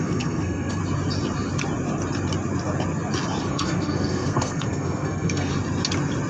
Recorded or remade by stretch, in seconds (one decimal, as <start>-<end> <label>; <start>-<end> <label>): 0.0-0.8 remade; 0.8-3.4 recorded; 3.4-5.5 remade; 5.5-6.3 recorded